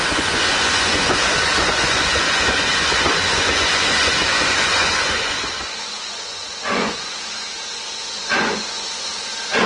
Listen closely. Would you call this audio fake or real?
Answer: fake